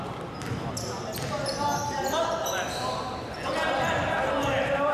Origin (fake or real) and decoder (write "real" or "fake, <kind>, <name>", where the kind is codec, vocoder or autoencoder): real